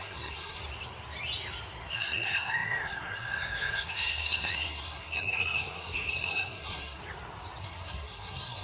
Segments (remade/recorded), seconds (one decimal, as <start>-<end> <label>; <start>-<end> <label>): 0.0-0.6 remade; 0.6-1.9 recorded; 1.9-7.0 remade; 7.0-7.6 recorded; 7.6-8.6 remade